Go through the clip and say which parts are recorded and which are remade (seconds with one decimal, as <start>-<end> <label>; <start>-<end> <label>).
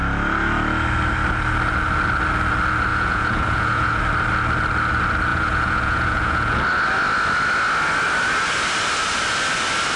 0.0-2.9 recorded; 2.9-4.0 remade; 4.0-5.3 recorded; 5.3-6.6 remade; 6.6-10.0 recorded